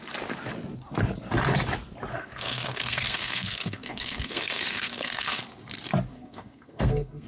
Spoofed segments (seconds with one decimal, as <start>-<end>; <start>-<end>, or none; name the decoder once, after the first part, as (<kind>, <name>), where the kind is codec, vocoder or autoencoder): 2.1-5.4 (codec, SNAC); 6.1-7.3